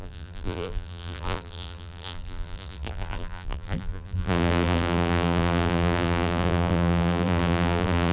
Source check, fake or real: fake